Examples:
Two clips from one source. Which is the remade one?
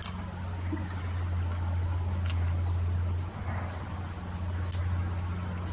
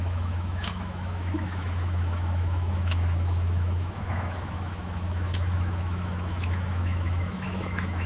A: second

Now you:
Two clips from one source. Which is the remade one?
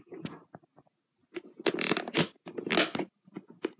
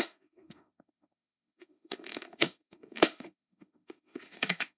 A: second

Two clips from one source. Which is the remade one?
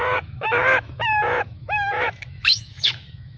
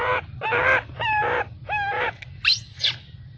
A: first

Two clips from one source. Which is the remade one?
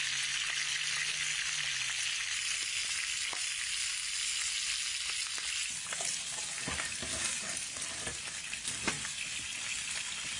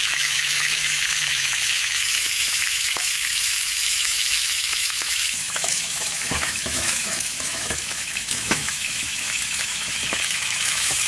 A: second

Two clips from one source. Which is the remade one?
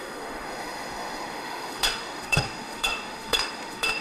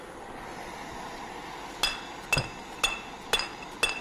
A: first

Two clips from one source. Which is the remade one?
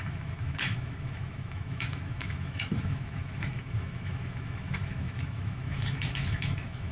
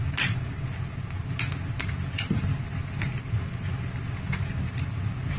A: first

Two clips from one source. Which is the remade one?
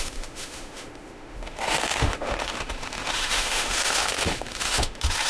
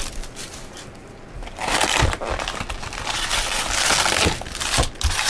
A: first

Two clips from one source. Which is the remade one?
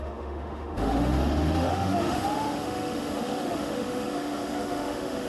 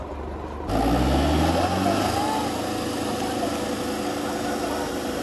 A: first